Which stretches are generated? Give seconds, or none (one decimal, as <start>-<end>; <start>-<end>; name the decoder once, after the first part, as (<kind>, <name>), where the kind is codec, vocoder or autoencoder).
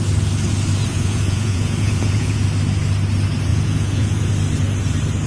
0.9-2.4 (vocoder, Vocos); 3.5-4.3